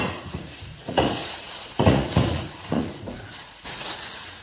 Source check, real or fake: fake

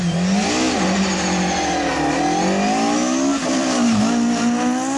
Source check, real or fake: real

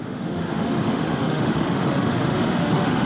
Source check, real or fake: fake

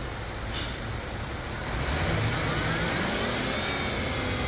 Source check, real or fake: real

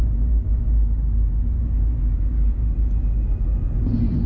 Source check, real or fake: real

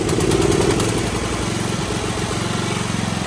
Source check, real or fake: real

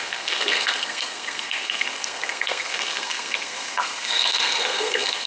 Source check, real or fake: fake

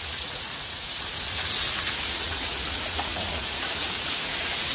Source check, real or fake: fake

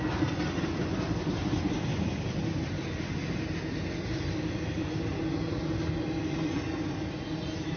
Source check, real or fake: real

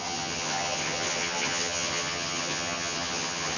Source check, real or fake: fake